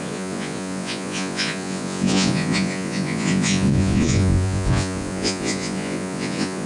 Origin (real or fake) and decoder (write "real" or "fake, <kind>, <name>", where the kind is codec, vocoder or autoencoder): fake, vocoder, Vocos